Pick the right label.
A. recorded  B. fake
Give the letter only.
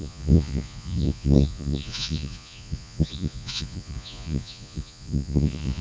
B